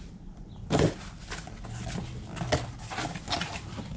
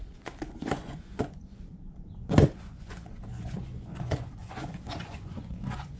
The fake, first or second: second